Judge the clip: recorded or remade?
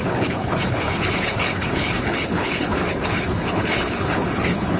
remade